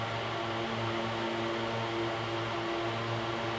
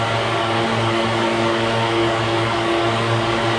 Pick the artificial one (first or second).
second